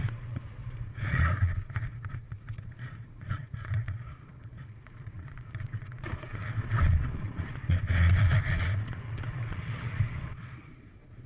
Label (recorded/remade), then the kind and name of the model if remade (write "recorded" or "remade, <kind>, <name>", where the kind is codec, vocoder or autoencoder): remade, vocoder, Vocos